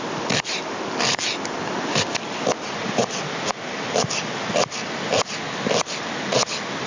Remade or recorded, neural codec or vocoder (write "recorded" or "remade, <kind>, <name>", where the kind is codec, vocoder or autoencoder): recorded